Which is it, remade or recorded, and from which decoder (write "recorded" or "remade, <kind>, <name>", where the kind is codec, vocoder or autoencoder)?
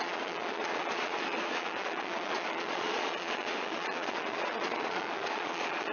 remade, vocoder, Vocos